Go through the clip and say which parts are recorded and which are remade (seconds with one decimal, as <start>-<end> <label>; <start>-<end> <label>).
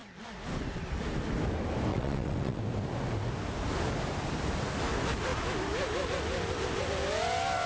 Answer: 0.0-1.9 recorded; 1.9-2.6 remade; 2.6-7.7 recorded